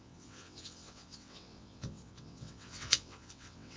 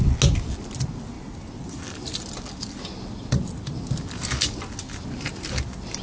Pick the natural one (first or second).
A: second